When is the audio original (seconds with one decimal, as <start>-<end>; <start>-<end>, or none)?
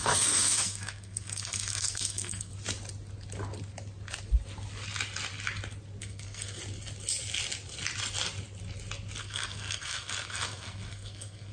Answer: 2.5-6.0; 6.6-9.2